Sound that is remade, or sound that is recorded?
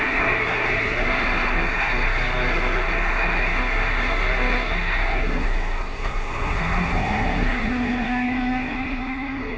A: remade